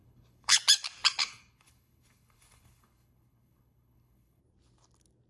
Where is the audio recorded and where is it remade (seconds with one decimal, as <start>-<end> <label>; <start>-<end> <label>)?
0.0-0.6 remade; 0.6-1.2 recorded; 1.2-4.4 remade; 4.4-5.3 recorded